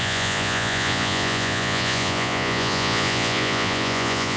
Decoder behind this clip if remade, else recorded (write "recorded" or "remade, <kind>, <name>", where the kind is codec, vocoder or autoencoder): remade, vocoder, Vocos